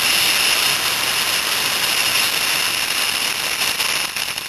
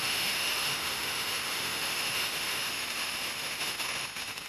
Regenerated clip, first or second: second